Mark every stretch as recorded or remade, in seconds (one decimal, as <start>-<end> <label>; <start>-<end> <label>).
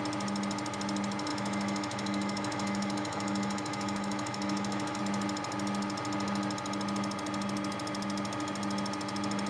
0.0-1.3 recorded; 1.3-5.0 remade; 5.0-9.5 recorded